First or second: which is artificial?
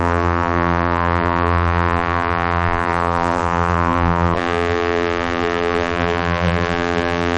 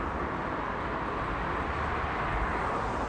first